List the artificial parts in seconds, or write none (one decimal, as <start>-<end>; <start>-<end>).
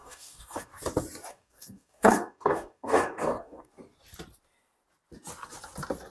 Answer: 0.0-0.7; 1.3-3.7